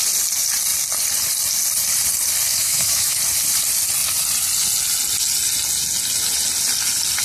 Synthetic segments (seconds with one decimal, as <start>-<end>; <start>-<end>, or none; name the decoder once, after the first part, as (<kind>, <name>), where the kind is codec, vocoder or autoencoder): 2.5-3.2 (autoencoder, DAC-VAE)